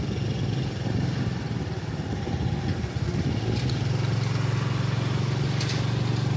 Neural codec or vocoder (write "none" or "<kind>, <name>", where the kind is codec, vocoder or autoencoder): none